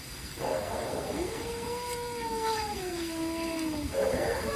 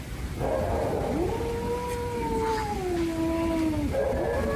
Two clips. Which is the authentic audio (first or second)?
second